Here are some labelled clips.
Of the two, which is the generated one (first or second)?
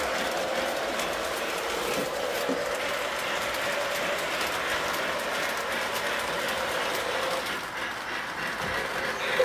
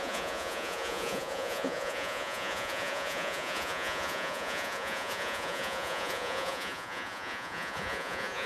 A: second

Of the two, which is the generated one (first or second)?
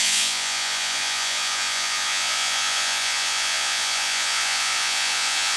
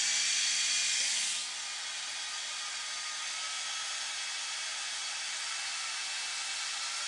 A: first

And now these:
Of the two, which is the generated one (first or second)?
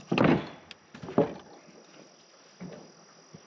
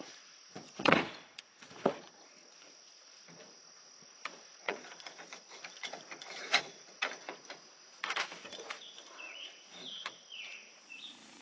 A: second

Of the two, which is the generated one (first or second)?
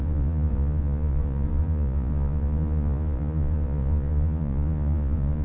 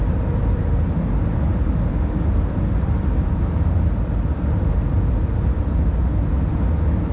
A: first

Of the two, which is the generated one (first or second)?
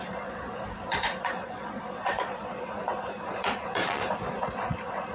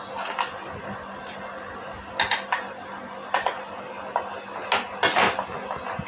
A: first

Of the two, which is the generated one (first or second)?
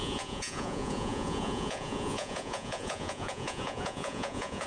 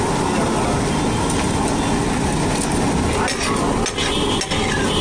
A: first